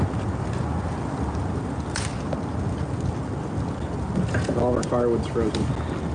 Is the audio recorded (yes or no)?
yes